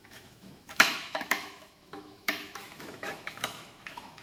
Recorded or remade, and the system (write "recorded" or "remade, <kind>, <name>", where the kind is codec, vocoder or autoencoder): remade, autoencoder, DAC-VAE